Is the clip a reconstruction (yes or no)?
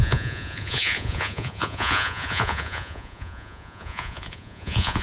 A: yes